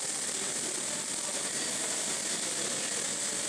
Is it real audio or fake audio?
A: real